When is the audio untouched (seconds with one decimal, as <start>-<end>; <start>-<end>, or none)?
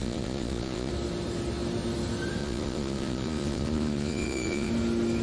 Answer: 0.9-2.4; 4.7-5.2